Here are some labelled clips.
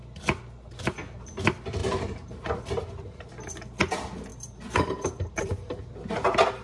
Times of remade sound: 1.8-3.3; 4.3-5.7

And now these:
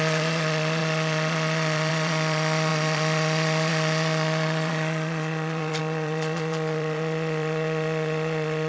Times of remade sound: 0.0-8.7